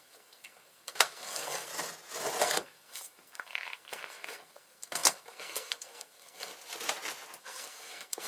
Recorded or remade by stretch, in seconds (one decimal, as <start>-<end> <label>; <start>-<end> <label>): 0.0-1.7 remade; 1.7-2.4 recorded; 2.4-6.5 remade; 6.5-7.4 recorded; 7.4-8.3 remade